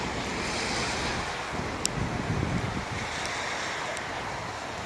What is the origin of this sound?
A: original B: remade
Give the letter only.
A